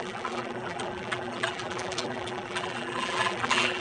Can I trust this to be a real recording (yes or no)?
no